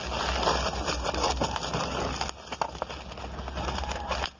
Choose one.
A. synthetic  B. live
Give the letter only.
B